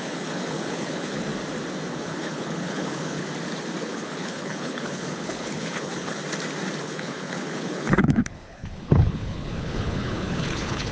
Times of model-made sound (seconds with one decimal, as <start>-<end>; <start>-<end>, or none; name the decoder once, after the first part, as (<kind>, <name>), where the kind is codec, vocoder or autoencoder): 0.0-1.3 (codec, HILCodec); 1.9-3.2; 3.8-6.2; 6.8-10.9